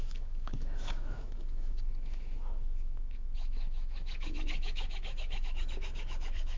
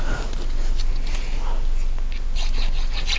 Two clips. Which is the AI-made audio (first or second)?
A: first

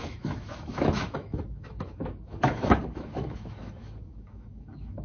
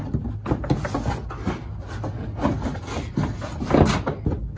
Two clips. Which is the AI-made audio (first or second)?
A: first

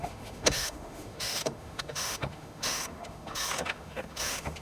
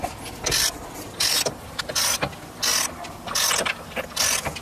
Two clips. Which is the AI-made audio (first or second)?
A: first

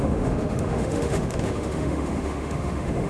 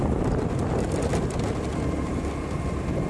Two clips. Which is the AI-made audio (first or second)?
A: first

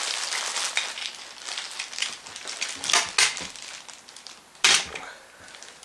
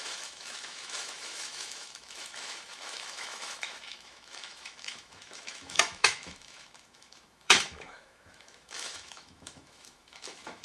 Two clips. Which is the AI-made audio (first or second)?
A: second